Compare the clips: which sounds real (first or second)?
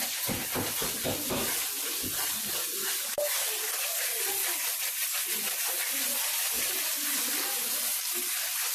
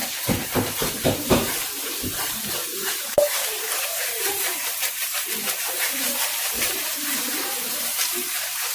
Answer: first